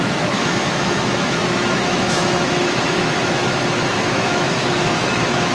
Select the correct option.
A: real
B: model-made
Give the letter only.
B